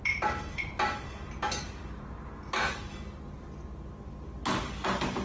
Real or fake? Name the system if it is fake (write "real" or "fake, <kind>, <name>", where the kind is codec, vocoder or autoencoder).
real